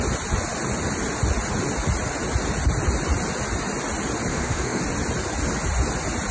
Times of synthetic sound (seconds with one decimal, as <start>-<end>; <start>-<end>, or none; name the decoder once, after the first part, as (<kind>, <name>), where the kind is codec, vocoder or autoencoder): 4.3-4.8 (autoencoder, DAC-VAE)